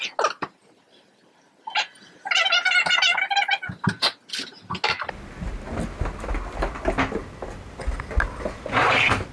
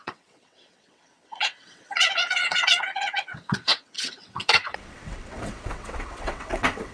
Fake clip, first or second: second